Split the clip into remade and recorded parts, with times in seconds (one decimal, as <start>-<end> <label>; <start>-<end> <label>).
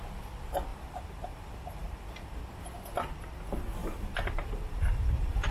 0.0-0.7 recorded; 0.7-2.4 remade; 2.4-3.8 recorded; 3.8-5.5 remade